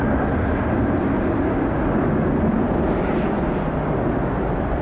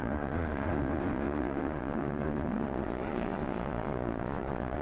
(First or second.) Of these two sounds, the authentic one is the first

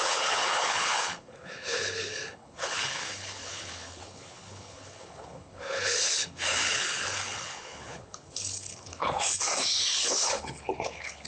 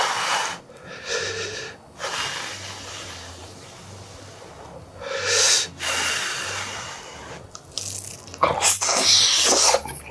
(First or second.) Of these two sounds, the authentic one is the second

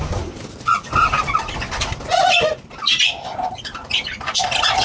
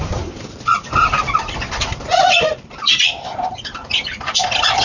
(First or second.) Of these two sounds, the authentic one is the first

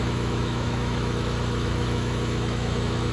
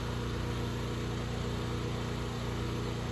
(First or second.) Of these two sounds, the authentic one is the second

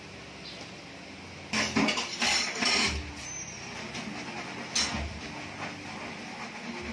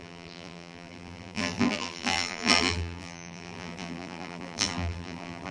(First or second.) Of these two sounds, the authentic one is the first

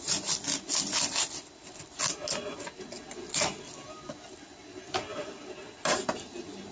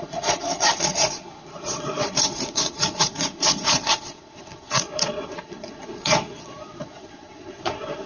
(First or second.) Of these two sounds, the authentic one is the first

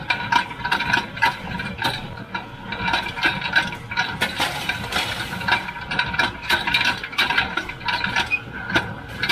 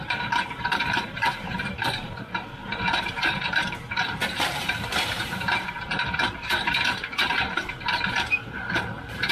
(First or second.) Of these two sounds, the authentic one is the first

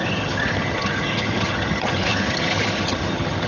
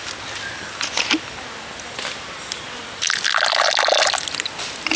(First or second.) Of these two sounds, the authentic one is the second